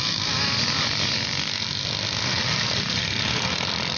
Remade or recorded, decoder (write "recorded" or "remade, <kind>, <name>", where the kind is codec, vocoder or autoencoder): recorded